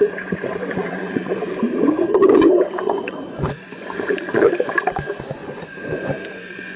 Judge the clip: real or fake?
fake